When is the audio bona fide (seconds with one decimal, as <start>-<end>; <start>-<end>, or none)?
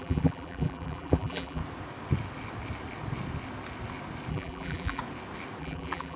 1.6-4.3; 5.0-5.6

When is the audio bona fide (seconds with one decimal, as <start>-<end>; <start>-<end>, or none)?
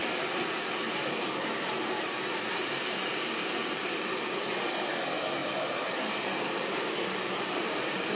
0.0-3.1; 4.5-5.4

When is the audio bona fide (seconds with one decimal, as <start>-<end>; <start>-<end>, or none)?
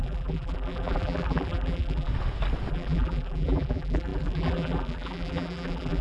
2.1-2.7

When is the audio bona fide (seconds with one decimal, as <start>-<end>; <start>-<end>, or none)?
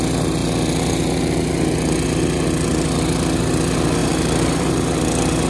0.0-4.0; 4.7-5.5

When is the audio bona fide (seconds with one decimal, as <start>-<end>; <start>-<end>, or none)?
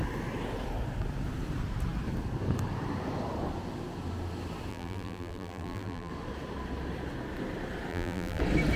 0.0-4.7; 6.1-7.9; 8.4-8.8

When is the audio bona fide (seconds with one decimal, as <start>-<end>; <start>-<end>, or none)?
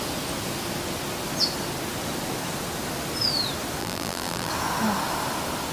0.0-3.8; 4.5-5.7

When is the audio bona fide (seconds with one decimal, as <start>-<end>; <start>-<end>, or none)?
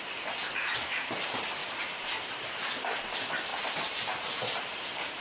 0.0-1.6; 2.1-3.5; 4.8-5.2